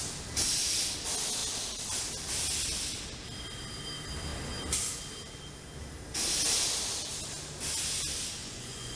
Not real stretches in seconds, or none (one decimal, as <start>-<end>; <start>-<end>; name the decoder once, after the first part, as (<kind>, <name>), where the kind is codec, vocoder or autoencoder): 8.4-9.0 (vocoder, Vocos)